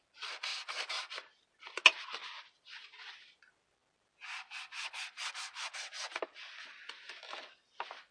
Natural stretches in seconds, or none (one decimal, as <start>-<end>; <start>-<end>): 0.0-8.1